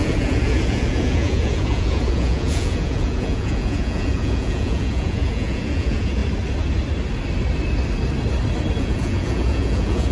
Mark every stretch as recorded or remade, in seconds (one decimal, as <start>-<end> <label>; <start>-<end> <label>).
0.0-6.2 remade; 6.2-8.8 recorded; 8.8-10.1 remade